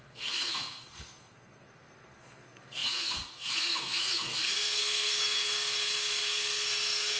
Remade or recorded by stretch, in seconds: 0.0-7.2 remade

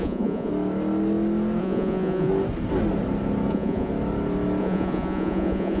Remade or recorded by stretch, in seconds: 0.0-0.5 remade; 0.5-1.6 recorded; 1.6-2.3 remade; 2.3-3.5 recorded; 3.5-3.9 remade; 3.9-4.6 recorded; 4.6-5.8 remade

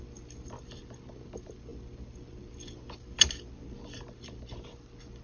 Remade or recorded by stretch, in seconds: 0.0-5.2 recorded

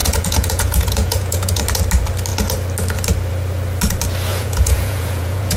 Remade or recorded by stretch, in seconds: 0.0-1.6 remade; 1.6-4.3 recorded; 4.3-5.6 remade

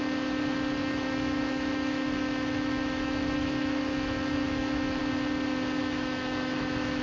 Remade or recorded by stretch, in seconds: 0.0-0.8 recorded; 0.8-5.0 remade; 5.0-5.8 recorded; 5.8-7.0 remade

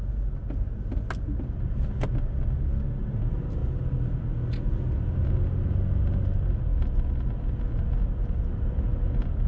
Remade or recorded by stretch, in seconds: 0.0-9.5 recorded

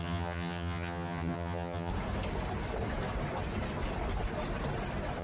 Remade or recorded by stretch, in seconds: 0.0-1.9 remade; 1.9-5.2 recorded

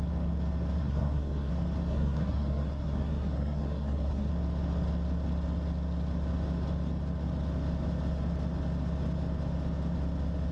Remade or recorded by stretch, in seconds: 0.0-0.8 recorded; 0.8-1.5 remade; 1.5-1.9 recorded; 1.9-4.3 remade; 4.3-10.5 recorded